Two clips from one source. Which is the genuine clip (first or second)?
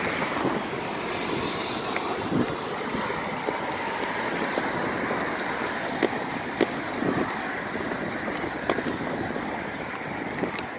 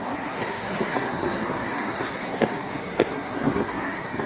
first